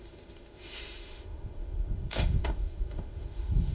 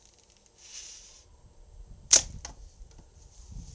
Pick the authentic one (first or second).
second